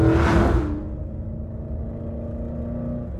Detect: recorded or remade recorded